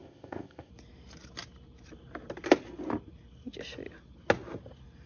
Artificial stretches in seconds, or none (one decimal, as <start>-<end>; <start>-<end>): 0.0-0.7